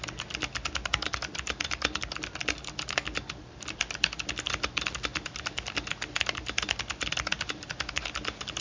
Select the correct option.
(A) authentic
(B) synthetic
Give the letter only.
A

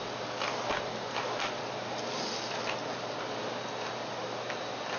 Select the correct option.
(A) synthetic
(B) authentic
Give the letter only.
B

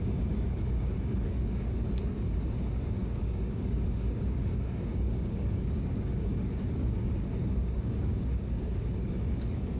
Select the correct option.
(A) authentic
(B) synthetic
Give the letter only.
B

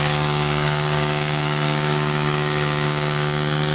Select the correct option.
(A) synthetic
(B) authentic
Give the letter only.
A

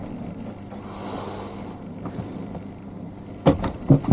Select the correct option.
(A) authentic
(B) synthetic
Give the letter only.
A